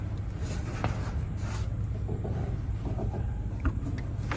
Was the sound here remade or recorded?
recorded